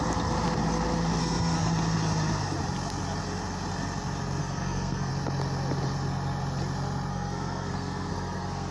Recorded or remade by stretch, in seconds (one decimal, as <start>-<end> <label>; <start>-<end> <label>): 0.0-1.2 recorded; 1.2-1.7 remade; 1.7-4.4 recorded; 4.4-5.1 remade; 5.1-7.1 recorded; 7.1-8.7 remade